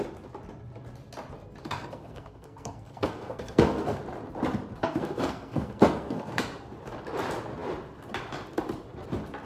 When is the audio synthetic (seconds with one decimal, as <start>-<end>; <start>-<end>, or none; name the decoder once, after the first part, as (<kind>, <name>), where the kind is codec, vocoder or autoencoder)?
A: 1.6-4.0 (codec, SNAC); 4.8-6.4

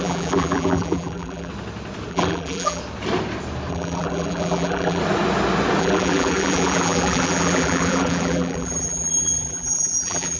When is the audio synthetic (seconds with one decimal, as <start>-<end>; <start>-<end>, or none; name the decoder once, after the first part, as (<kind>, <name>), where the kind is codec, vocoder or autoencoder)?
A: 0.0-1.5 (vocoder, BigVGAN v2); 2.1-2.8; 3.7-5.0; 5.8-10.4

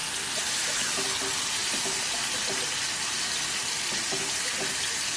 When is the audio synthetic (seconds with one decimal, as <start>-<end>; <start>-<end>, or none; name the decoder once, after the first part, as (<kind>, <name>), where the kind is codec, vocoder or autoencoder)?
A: none

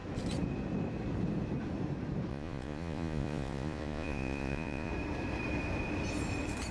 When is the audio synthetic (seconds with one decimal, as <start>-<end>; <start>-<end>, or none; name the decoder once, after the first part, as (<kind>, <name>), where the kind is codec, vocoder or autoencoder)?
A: 2.3-4.9 (vocoder, Vocos)